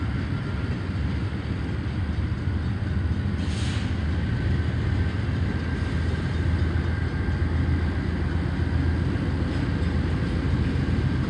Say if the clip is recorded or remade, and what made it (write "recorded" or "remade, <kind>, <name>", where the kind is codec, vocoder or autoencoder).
recorded